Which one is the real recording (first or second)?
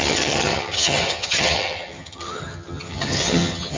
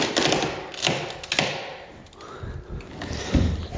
second